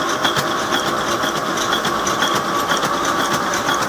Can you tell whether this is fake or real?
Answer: real